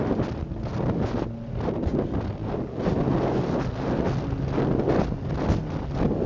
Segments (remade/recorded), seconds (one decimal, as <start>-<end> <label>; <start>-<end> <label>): 0.0-6.3 recorded